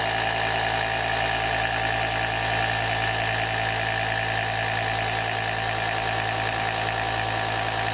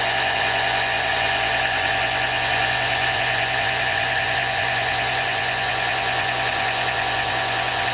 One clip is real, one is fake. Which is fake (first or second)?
second